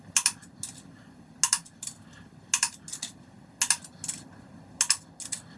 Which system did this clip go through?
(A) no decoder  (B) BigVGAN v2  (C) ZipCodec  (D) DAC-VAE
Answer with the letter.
A